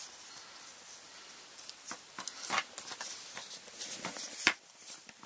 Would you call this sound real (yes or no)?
yes